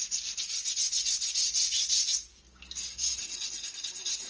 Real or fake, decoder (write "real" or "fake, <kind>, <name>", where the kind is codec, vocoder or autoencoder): real